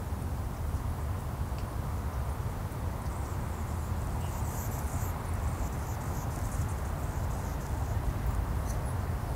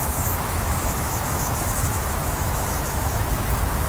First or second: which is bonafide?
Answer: first